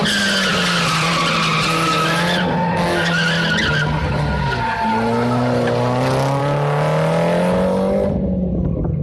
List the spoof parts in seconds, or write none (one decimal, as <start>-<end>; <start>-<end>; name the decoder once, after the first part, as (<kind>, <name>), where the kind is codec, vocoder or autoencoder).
none